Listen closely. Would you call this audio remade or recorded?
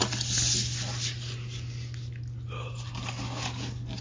recorded